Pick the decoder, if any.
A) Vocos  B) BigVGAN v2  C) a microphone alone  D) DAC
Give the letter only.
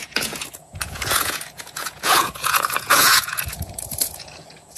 A